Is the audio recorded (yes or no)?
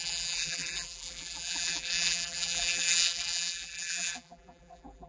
no